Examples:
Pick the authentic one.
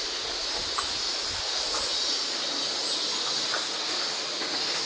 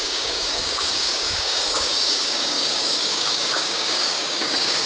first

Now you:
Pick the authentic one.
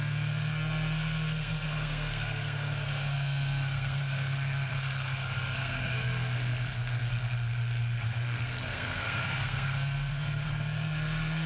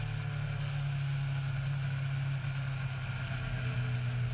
second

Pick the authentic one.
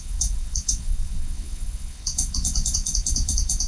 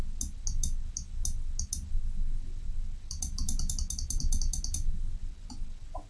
second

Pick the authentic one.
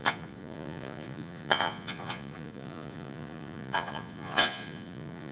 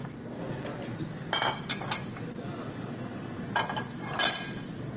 second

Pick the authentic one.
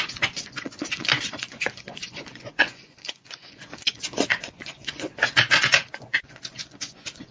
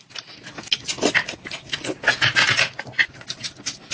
second